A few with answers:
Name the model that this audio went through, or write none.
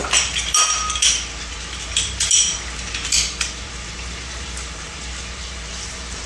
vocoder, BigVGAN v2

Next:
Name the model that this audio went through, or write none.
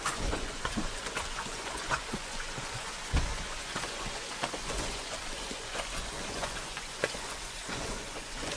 vocoder, Vocos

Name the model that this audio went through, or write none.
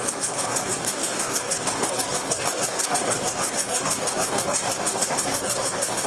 codec, DAC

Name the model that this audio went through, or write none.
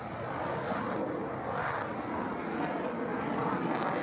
none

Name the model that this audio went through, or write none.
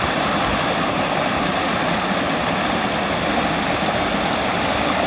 none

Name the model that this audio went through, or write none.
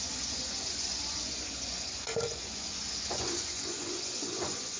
vocoder, Vocos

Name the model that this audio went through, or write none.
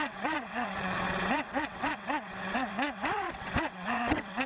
vocoder, WaveNeXt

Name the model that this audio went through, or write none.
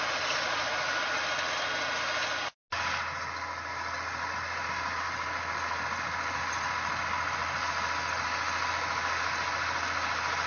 none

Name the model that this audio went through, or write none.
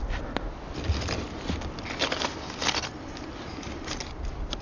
none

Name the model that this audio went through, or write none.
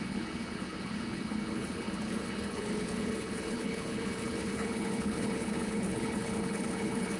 codec, HILCodec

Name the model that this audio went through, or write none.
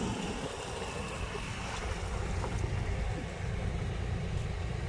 none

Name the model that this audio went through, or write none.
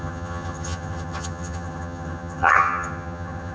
vocoder, HiFi-GAN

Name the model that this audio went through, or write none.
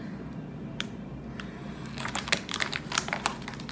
none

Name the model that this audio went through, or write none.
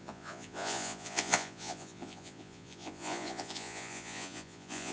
vocoder, Vocos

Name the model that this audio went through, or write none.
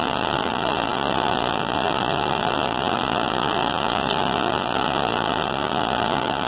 vocoder, Vocos